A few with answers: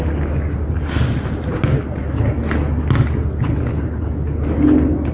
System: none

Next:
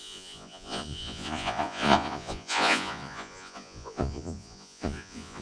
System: vocoder, Vocos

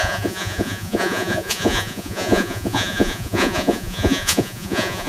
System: vocoder, Vocos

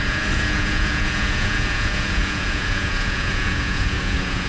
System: vocoder, Vocos